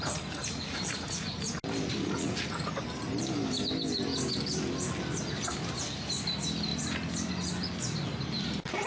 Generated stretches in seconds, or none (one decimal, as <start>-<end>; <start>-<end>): 0.5-1.5; 2.0-2.7